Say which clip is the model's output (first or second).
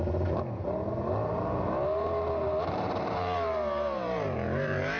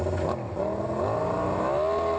first